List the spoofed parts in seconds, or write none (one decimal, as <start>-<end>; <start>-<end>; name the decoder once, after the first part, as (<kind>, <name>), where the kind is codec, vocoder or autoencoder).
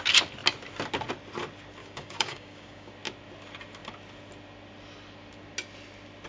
1.8-2.9 (codec, DAC)